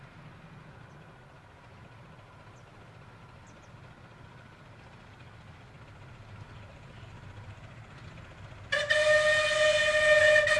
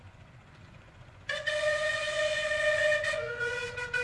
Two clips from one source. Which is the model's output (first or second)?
second